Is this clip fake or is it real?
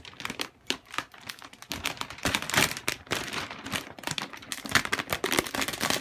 real